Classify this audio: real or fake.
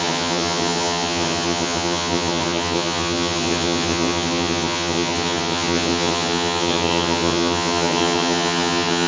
fake